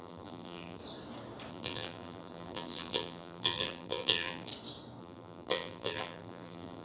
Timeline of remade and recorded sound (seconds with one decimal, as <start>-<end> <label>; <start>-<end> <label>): 0.0-0.8 remade; 0.8-1.5 recorded; 1.5-4.5 remade; 4.5-5.0 recorded; 5.0-6.8 remade